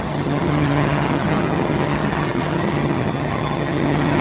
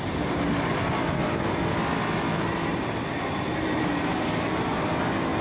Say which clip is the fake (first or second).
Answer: first